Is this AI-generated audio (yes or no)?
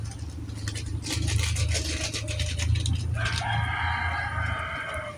no